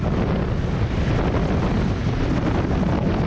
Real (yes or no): yes